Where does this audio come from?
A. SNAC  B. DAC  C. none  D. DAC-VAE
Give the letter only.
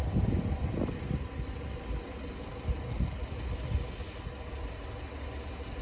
C